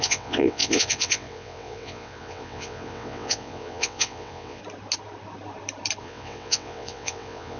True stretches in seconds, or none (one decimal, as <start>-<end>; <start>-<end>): 4.6-6.0